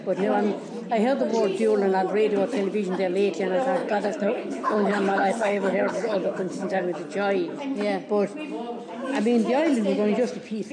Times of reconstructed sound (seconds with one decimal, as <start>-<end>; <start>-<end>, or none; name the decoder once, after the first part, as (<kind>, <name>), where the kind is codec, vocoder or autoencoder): 3.8-6.8 (codec, HILCodec)